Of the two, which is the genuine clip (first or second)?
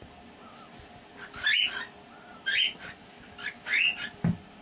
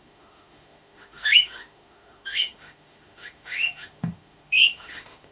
first